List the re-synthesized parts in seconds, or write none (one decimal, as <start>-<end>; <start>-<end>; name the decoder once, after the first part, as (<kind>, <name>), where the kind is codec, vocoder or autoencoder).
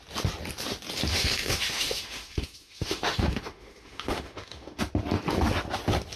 1.1-4.8 (autoencoder, DAC-VAE)